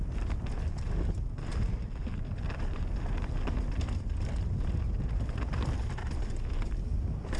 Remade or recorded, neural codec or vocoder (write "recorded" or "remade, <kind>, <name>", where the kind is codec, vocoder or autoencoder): recorded